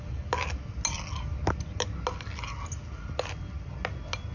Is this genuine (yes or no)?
yes